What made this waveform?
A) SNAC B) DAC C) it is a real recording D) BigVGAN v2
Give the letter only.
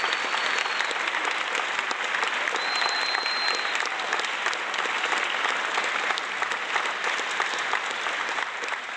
C